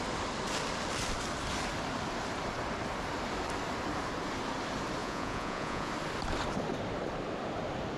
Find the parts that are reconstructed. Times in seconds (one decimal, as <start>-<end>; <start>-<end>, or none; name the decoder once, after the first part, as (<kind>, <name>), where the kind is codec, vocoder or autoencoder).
5.0-5.9 (vocoder, Vocos)